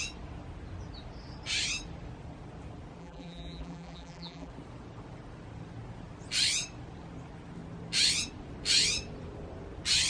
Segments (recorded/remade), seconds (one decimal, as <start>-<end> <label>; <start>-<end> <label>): 0.0-3.0 recorded; 3.0-4.5 remade; 4.5-10.1 recorded